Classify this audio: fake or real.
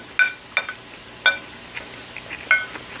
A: real